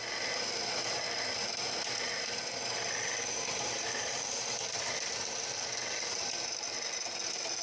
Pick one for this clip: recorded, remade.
recorded